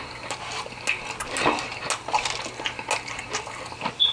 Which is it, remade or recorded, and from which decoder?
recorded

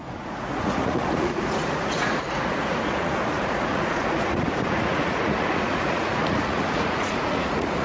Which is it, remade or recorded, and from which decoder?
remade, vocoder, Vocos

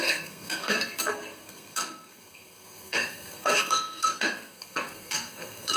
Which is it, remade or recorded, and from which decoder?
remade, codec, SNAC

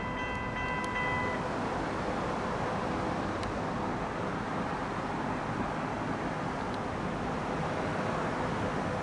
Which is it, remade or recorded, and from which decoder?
recorded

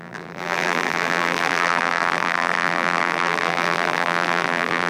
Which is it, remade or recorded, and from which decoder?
remade, vocoder, BigVGAN v2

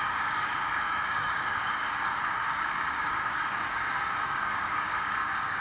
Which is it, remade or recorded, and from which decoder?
remade, codec, DAC